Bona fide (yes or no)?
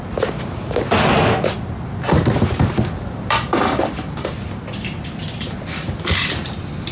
no